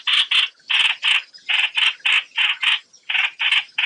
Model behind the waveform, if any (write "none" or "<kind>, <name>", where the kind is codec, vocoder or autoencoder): none